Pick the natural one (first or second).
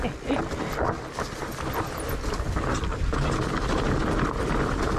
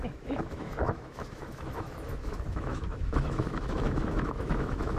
first